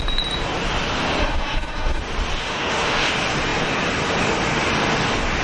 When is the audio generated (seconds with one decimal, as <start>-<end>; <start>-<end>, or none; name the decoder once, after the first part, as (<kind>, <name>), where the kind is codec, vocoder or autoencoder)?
1.2-2.0 (autoencoder, DAC-VAE); 2.4-3.1